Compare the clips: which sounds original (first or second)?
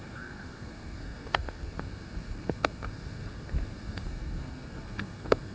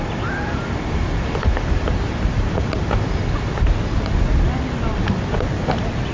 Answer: second